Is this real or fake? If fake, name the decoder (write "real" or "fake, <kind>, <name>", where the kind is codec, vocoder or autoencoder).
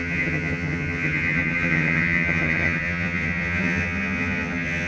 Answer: fake, vocoder, HiFi-GAN